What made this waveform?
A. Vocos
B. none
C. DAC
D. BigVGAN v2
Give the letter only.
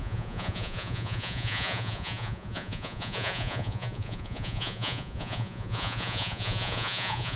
A